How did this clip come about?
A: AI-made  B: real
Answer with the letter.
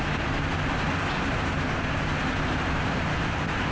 B